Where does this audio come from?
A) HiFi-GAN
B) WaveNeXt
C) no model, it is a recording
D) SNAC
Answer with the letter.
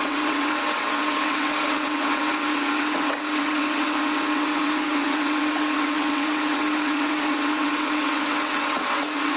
B